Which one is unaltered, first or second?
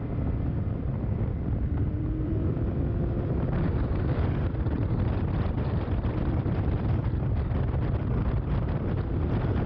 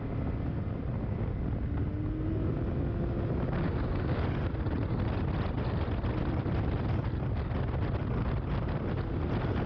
second